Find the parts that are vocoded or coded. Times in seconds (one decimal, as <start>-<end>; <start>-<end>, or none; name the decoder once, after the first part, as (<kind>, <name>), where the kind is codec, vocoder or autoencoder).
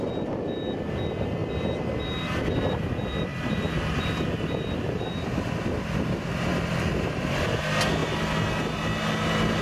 1.4-2.7 (vocoder, BigVGAN v2); 3.3-4.0; 6.5-7.6